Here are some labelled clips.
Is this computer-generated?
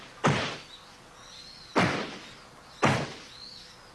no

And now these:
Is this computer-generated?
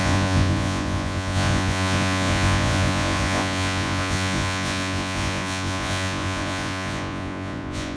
yes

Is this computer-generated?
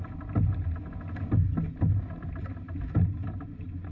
no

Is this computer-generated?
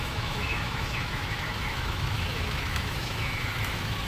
yes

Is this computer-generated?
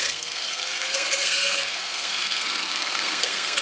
yes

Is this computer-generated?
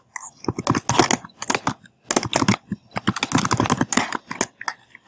no